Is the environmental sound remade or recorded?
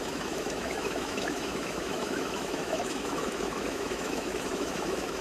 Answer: remade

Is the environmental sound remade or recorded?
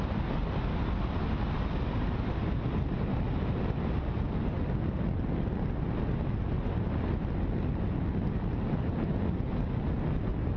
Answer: recorded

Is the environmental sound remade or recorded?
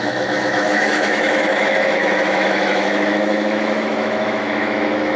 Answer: remade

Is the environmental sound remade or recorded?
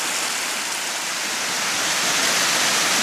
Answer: recorded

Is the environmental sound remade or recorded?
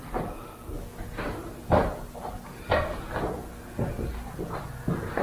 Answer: recorded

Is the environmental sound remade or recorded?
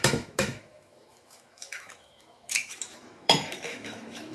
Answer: remade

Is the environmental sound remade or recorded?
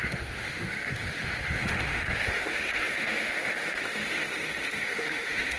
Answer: remade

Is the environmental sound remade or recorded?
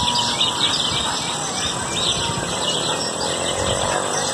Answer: recorded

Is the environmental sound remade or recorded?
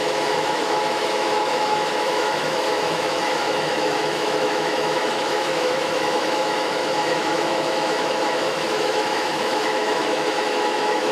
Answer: remade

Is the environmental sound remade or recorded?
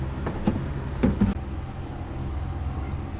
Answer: recorded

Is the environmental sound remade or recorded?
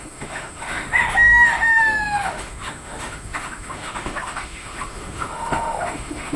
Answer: remade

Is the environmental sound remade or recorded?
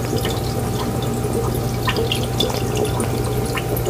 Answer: recorded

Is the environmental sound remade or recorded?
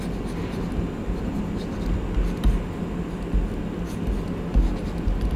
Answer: recorded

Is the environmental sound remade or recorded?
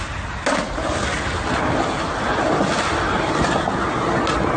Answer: recorded